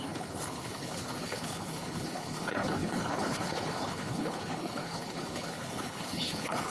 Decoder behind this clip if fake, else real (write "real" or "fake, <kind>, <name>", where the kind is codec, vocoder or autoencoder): fake, codec, HILCodec